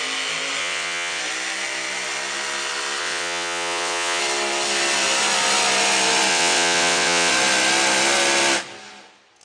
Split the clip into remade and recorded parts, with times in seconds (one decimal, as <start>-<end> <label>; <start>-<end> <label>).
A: 0.0-0.6 recorded; 0.6-1.2 remade; 1.2-3.0 recorded; 3.0-4.2 remade; 4.2-6.3 recorded; 6.3-7.3 remade; 7.3-9.4 recorded